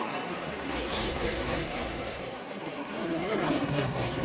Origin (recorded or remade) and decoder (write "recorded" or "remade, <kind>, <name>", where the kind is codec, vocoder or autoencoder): remade, codec, SNAC